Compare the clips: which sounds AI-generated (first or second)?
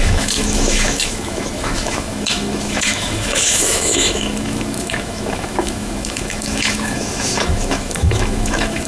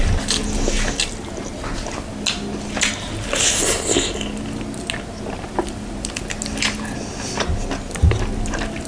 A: first